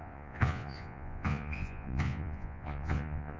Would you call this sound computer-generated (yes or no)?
yes